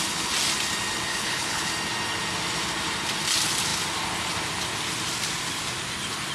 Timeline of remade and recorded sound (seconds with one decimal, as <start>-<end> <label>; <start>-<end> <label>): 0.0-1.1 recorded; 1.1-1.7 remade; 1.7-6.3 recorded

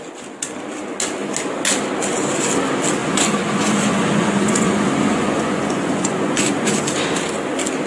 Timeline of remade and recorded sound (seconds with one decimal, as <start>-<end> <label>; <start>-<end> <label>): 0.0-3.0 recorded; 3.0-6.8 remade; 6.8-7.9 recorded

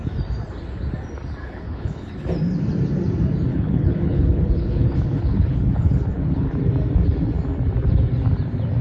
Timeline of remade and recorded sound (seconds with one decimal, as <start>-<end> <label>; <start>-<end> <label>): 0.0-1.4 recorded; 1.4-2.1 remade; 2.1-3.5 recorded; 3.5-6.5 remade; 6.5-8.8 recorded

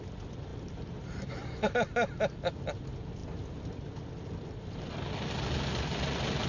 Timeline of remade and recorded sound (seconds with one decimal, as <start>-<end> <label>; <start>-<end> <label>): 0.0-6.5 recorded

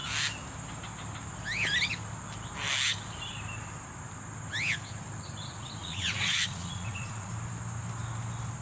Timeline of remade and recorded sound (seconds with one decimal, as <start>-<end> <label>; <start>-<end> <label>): 0.0-5.8 recorded; 5.8-7.3 remade; 7.3-8.6 recorded

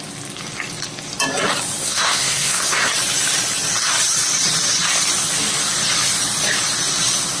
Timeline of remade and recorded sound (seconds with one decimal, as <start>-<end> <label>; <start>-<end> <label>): 0.0-1.8 recorded; 1.8-2.9 remade; 2.9-7.4 recorded